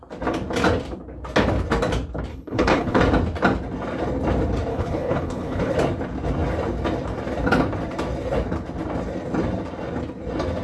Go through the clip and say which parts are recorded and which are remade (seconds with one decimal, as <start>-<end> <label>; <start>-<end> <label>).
0.0-2.3 recorded; 2.3-3.0 remade; 3.0-4.7 recorded; 4.7-5.7 remade; 5.7-10.6 recorded